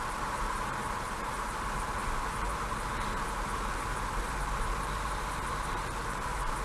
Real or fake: fake